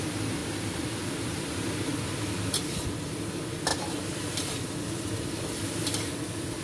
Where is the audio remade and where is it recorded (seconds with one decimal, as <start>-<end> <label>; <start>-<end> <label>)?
0.0-6.6 remade